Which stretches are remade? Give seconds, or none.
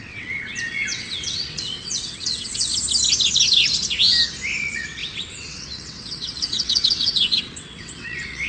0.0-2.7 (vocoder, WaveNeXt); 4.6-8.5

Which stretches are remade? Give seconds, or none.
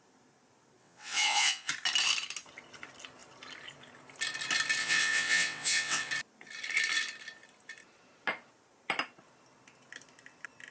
0.8-1.7 (vocoder, WaveNeXt); 4.8-6.1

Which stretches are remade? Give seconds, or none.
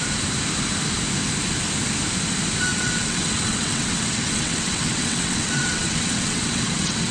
2.7-7.1 (vocoder, WaveNeXt)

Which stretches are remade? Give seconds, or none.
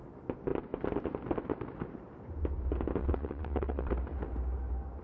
3.0-3.9 (vocoder, WaveNeXt)